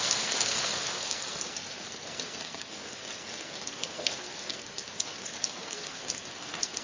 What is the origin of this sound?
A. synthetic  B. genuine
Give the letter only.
A